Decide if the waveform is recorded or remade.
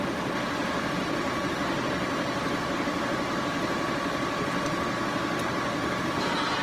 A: recorded